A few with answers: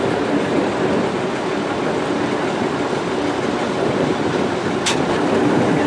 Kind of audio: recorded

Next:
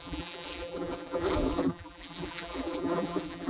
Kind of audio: remade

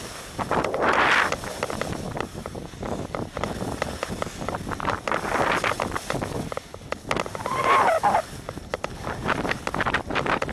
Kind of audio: recorded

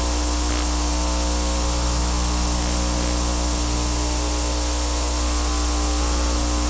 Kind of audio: recorded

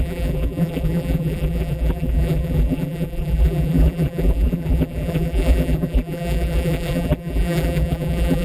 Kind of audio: remade